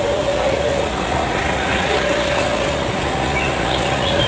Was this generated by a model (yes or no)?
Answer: yes